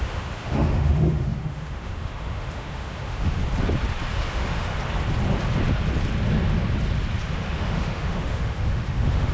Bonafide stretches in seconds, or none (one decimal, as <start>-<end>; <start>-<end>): 3.4-4.1; 4.7-7.3